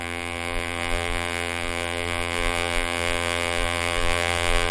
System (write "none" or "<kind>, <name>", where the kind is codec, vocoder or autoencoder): vocoder, BigVGAN v2